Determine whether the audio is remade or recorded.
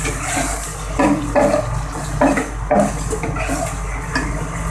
recorded